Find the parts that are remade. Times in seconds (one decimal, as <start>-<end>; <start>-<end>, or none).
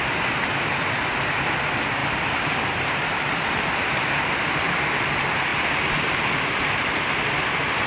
2.0-4.6